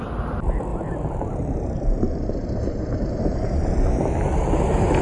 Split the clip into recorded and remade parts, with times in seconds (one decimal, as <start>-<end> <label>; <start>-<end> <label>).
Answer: 0.0-0.7 recorded; 0.7-3.7 remade; 3.7-5.0 recorded